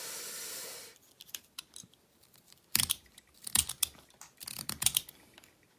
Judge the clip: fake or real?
fake